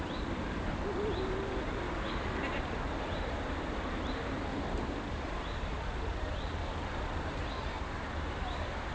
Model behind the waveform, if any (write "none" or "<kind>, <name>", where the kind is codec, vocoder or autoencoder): vocoder, BigVGAN v2